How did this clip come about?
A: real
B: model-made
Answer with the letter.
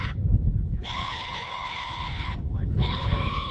B